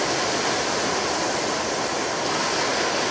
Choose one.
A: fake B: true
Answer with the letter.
B